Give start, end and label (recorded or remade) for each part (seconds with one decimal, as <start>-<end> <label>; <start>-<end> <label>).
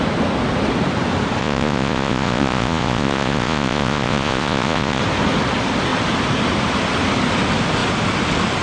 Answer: 0.0-1.4 recorded; 1.4-5.0 remade; 5.0-8.6 recorded